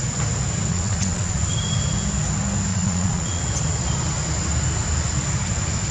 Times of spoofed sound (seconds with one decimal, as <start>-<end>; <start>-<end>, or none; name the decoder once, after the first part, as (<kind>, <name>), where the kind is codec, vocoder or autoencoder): 0.7-1.4 (vocoder, Vocos); 2.7-3.4